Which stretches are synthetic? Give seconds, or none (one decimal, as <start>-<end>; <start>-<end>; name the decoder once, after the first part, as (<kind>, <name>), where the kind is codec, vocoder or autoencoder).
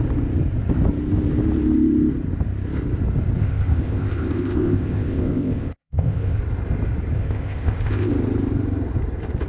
3.4-6.4 (codec, ZipCodec); 7.2-8.1